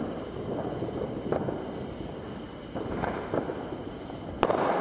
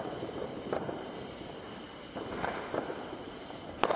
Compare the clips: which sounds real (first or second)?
first